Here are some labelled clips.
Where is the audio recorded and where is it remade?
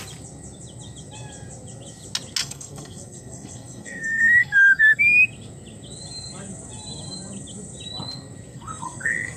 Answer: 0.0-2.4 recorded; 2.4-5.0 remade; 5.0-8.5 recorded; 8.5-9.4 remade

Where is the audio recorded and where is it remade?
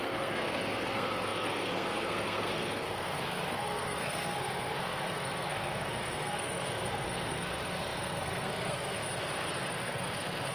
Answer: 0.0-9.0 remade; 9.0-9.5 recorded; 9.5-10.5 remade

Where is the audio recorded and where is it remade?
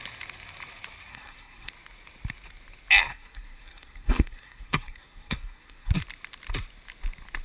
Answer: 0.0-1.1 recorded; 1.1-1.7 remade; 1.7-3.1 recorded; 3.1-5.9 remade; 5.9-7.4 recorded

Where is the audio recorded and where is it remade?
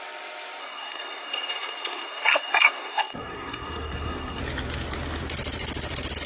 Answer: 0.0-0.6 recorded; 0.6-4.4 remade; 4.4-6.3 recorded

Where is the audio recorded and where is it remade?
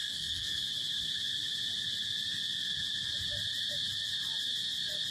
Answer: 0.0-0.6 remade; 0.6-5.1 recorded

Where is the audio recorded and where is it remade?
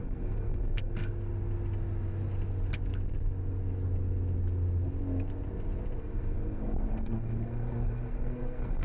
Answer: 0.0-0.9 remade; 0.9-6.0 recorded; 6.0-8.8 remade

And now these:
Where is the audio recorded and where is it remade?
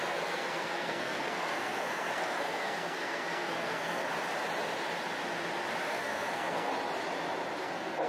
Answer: 0.0-4.0 remade; 4.0-5.8 recorded; 5.8-6.7 remade; 6.7-7.6 recorded; 7.6-8.1 remade